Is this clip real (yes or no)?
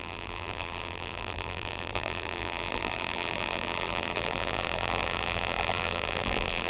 no